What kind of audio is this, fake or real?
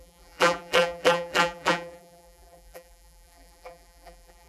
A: fake